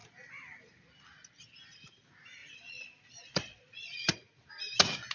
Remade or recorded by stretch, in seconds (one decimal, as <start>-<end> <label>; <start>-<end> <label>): 0.0-2.4 recorded; 2.4-4.5 remade; 4.5-5.1 recorded